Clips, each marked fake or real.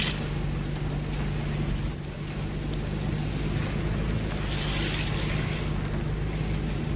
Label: real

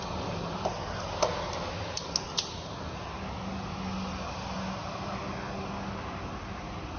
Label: real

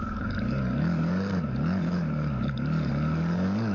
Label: fake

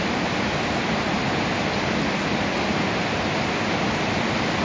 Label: real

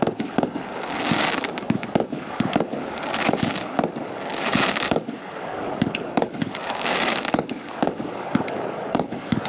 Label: fake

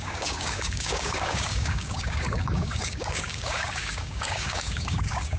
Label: fake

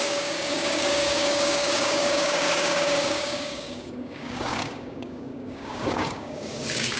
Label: fake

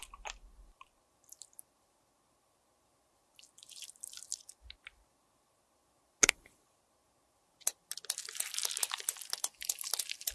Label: real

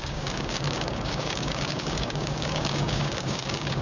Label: fake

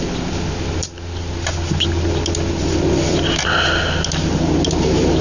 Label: real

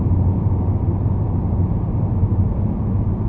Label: real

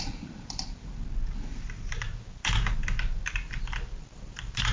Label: real